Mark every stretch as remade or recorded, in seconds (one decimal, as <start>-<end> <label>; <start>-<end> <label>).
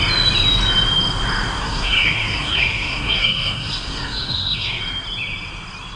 0.0-1.6 recorded; 1.6-4.8 remade; 4.8-6.0 recorded